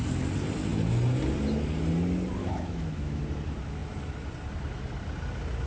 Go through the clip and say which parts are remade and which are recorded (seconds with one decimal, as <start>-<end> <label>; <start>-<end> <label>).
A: 0.0-2.4 recorded; 2.4-3.2 remade; 3.2-5.7 recorded